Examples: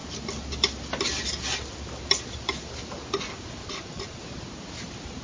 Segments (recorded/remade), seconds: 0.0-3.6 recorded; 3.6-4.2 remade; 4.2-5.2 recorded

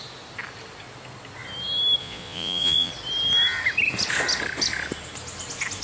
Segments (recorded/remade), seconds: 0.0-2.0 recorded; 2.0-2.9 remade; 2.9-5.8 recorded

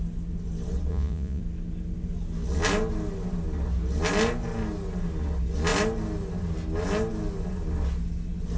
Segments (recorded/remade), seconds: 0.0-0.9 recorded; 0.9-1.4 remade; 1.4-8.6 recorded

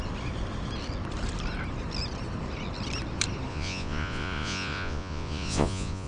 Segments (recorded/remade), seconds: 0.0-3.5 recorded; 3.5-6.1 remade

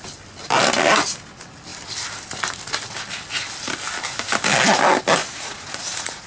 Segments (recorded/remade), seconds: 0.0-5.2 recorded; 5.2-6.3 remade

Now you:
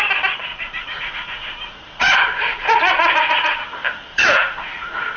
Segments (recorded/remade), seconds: 0.0-0.5 recorded; 0.5-3.6 remade; 3.6-4.1 recorded; 4.1-5.2 remade

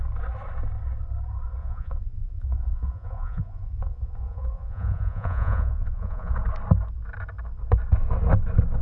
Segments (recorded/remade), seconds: 0.0-1.6 recorded; 1.6-6.3 remade; 6.3-8.8 recorded

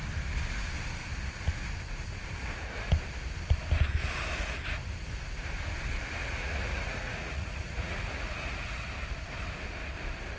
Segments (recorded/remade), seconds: 0.0-6.2 recorded; 6.2-8.9 remade; 8.9-10.4 recorded